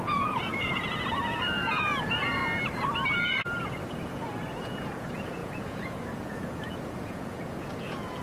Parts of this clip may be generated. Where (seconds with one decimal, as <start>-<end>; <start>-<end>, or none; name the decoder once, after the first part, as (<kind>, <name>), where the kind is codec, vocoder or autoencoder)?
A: 0.0-2.4 (vocoder, Vocos); 3.6-8.2